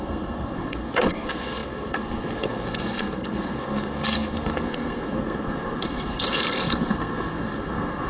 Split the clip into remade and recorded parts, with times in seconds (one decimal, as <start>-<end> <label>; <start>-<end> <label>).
0.0-8.1 remade